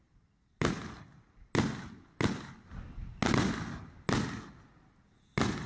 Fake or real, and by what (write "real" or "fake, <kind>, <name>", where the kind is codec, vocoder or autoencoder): real